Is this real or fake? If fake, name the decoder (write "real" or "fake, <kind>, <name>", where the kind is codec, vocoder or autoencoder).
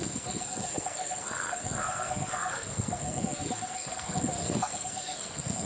fake, codec, SNAC